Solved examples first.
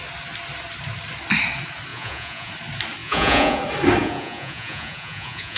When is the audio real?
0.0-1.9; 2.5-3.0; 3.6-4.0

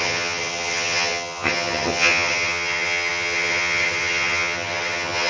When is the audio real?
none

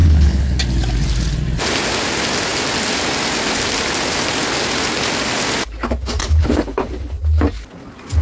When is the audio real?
0.6-6.2; 7.2-8.2

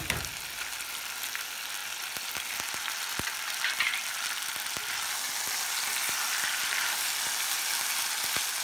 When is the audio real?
0.0-8.6

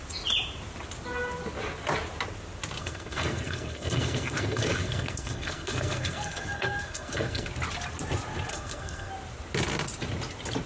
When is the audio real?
0.0-2.8; 7.5-8.5; 9.1-10.7

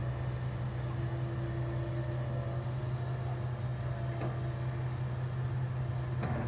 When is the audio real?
0.0-6.5